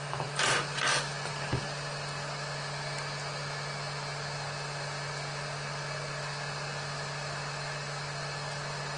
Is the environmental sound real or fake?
real